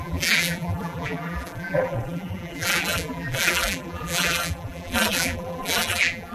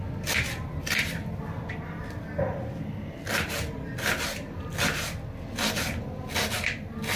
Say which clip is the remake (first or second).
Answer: first